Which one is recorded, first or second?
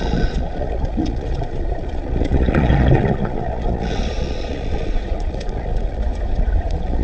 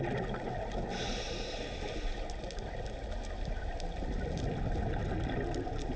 second